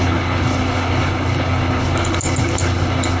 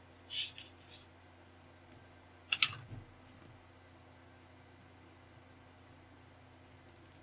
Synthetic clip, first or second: first